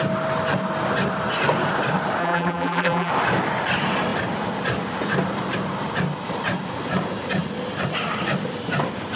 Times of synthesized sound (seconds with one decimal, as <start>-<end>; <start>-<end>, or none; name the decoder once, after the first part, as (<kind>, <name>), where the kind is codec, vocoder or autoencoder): 2.2-3.1 (vocoder, BigVGAN v2)